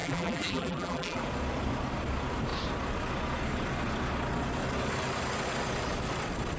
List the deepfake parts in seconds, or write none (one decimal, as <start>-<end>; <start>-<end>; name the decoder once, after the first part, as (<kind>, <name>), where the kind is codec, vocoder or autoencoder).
0.0-1.2 (vocoder, BigVGAN v2)